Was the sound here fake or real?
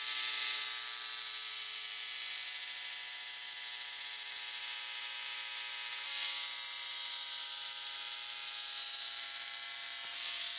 real